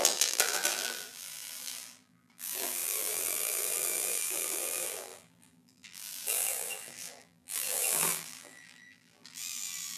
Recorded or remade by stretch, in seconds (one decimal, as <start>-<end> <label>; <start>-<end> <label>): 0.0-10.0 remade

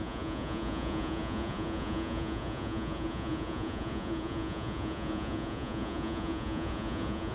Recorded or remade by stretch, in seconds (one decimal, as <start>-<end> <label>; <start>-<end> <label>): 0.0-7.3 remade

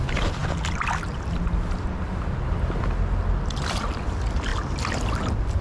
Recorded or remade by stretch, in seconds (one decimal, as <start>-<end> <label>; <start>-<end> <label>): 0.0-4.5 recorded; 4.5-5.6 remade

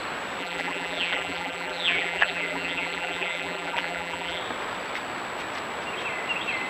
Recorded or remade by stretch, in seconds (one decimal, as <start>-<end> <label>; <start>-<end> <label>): 0.0-0.4 recorded; 0.4-4.4 remade; 4.4-6.7 recorded